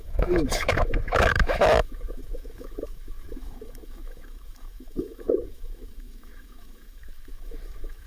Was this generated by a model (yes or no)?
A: yes